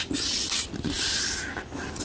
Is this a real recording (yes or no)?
yes